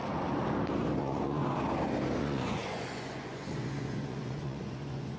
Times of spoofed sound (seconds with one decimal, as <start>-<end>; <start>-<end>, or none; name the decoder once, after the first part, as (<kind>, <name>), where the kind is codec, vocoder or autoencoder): 1.0-1.4 (vocoder, Vocos); 2.2-5.2